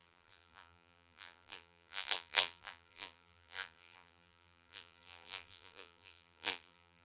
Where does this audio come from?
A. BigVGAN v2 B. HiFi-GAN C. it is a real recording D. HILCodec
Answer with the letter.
A